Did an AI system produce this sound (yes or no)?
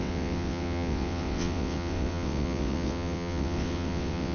yes